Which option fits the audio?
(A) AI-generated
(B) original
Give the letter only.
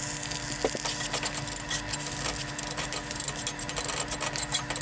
B